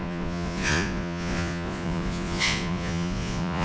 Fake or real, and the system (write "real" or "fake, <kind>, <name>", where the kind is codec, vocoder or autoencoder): fake, vocoder, Vocos